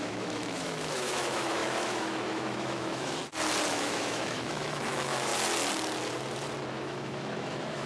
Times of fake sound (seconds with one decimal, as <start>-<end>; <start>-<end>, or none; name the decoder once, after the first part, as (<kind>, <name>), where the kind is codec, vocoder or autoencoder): 0.0-3.2 (autoencoder, DAC-VAE); 3.7-5.3; 6.7-7.9